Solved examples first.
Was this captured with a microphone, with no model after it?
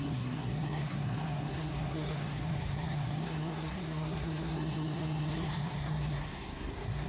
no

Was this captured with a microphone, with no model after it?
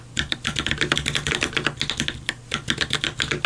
yes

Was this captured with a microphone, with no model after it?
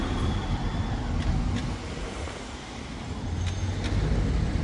yes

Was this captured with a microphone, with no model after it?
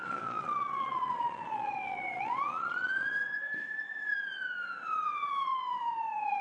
no